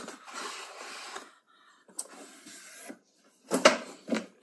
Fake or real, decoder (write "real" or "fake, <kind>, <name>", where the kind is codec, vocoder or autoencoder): real